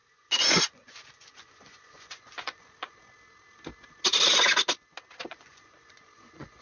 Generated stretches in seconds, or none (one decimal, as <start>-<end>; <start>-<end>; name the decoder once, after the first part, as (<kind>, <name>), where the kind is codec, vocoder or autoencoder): 0.0-3.0 (vocoder, Vocos); 5.3-6.6